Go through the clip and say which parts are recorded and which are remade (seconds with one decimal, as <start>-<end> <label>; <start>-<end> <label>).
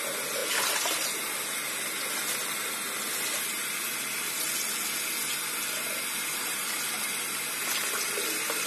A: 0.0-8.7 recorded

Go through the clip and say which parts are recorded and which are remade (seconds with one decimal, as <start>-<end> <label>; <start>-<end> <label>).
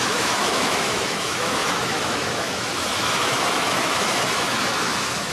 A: 0.0-5.3 remade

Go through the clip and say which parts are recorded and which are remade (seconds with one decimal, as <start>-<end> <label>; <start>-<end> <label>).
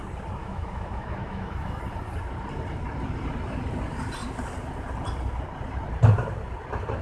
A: 0.0-0.4 recorded; 0.4-1.8 remade; 1.8-7.0 recorded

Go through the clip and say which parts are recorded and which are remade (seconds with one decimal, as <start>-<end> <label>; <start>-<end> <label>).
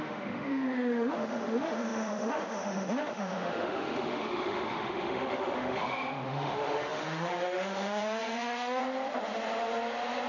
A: 0.0-8.8 remade; 8.8-10.3 recorded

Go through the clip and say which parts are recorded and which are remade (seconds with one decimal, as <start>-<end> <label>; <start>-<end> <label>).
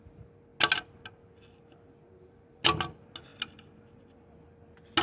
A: 0.0-5.0 recorded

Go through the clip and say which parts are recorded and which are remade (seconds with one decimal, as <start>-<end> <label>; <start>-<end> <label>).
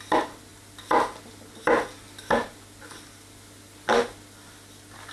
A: 0.0-5.1 recorded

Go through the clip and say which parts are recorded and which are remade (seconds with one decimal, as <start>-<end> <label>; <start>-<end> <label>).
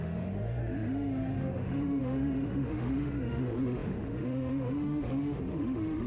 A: 0.0-6.1 remade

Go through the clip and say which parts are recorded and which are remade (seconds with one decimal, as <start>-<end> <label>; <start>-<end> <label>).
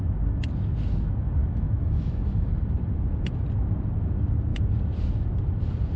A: 0.0-1.4 recorded; 1.4-2.5 remade; 2.5-6.0 recorded